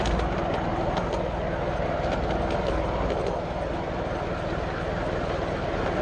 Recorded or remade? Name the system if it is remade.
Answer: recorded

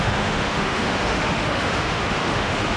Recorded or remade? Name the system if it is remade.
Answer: remade, autoencoder, DAC-VAE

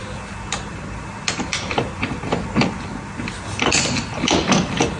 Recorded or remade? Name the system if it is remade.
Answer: recorded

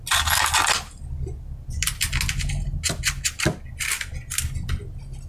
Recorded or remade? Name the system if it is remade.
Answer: recorded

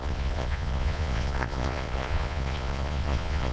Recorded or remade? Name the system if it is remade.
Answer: remade, vocoder, Vocos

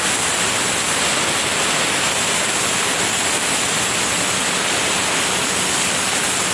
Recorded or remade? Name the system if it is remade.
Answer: recorded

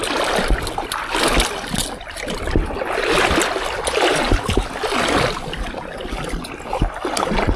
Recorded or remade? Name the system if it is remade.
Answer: recorded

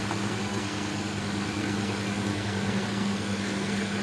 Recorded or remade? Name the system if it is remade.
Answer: remade, codec, SNAC